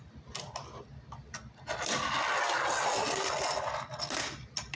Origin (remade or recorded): recorded